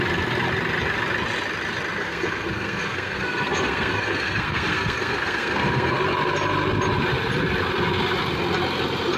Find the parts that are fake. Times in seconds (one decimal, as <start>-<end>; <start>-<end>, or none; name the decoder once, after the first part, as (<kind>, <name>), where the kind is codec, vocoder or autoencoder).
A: 2.0-6.0 (codec, SNAC)